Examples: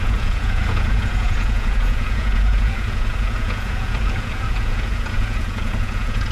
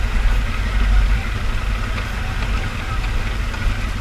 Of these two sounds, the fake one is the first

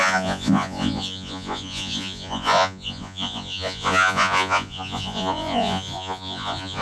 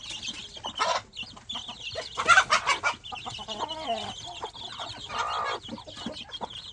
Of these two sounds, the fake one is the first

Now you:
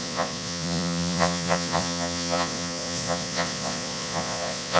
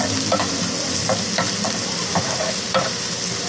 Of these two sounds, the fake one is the first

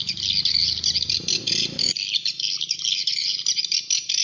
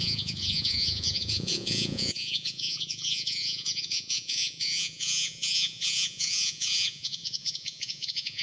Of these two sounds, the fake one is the second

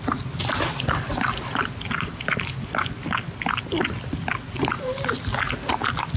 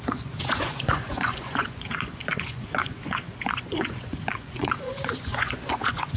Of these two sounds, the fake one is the second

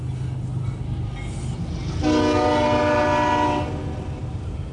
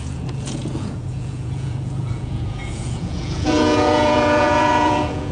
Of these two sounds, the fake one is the second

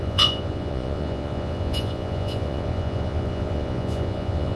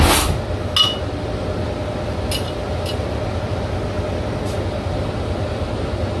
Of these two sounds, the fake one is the first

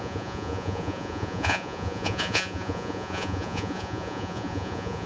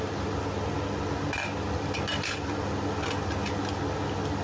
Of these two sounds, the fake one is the first